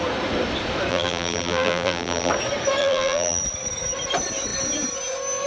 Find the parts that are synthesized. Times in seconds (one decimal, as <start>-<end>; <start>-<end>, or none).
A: 0.9-2.3; 2.8-3.4